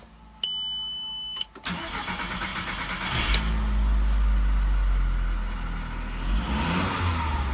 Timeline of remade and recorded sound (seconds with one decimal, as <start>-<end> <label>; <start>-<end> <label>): 0.0-7.5 recorded